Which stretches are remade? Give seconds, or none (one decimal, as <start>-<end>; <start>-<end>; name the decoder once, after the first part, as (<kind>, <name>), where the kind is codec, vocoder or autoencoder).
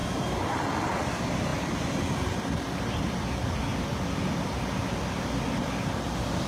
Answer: none